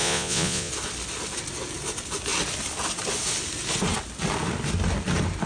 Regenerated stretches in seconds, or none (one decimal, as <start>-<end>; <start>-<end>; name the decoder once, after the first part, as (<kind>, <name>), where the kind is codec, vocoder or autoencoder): 0.0-0.7 (vocoder, Vocos)